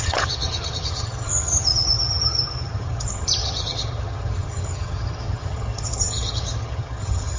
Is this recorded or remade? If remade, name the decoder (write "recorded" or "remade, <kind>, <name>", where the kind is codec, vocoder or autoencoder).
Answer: remade, vocoder, HiFi-GAN